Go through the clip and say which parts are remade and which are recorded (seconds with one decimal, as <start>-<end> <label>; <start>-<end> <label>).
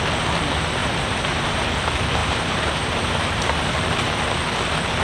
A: 0.0-0.8 recorded; 0.8-1.6 remade; 1.6-2.2 recorded; 2.2-3.7 remade; 3.7-5.0 recorded